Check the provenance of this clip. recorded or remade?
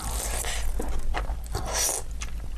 recorded